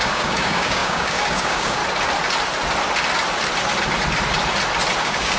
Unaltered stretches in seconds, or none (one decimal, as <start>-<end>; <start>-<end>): 1.8-5.0